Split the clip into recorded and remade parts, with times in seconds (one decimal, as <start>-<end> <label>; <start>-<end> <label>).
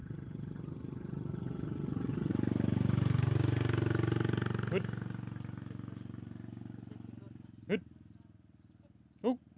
0.0-2.3 remade; 2.3-9.6 recorded